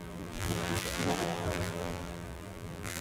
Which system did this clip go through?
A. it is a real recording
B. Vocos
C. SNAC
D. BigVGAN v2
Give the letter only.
D